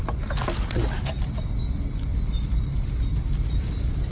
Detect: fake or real real